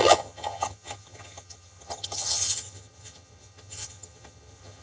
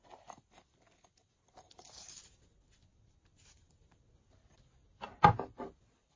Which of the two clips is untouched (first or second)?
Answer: second